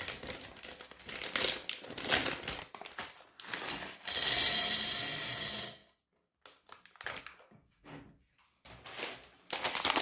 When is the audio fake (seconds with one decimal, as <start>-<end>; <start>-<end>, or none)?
none